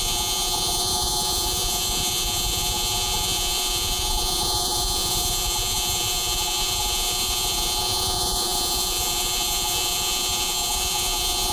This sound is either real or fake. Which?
fake